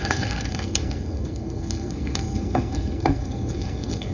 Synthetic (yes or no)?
yes